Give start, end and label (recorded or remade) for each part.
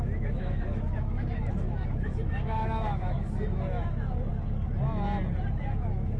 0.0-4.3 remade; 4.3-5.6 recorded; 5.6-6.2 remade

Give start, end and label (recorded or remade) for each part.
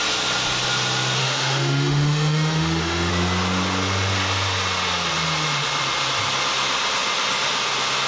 0.0-1.2 recorded; 1.2-3.1 remade; 3.1-8.1 recorded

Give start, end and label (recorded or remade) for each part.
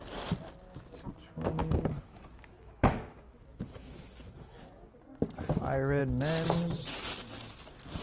0.0-1.6 recorded; 1.6-5.0 remade; 5.0-8.0 recorded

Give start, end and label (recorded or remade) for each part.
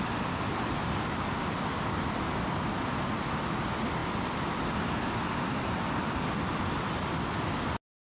0.0-8.2 recorded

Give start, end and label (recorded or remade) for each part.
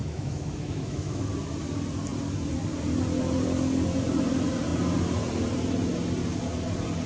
0.0-1.3 remade; 1.3-7.1 recorded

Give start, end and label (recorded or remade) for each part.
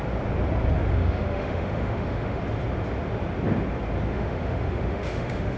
0.0-0.9 recorded; 0.9-2.4 remade; 2.4-4.1 recorded; 4.1-5.6 remade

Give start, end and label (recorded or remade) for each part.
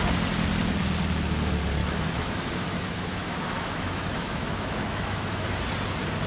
0.0-1.8 recorded; 1.8-5.6 remade; 5.6-6.3 recorded